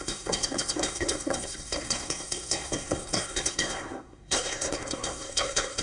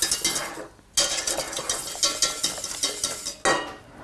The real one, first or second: second